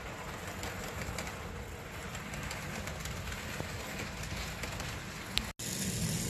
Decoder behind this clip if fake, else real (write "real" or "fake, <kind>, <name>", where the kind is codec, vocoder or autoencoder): real